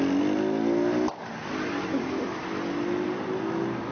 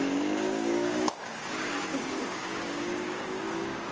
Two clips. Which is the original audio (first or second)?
first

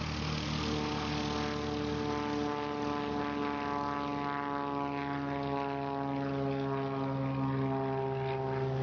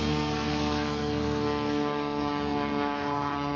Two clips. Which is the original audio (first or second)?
first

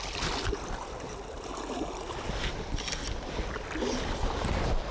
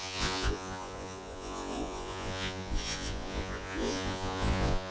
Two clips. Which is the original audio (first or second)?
first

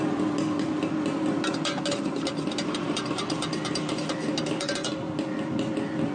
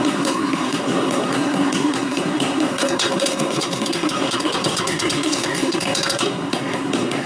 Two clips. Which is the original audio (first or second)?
first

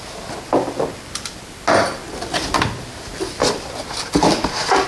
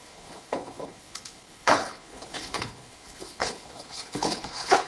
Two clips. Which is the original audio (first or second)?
first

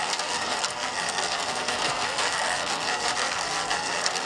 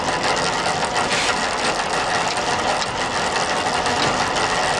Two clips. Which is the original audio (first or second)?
second